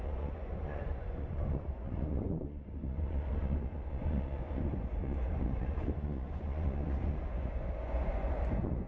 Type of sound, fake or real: fake